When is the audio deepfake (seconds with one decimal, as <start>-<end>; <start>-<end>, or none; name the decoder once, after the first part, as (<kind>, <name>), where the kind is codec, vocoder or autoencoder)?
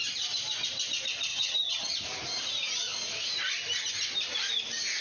1.3-1.9 (vocoder, HiFi-GAN)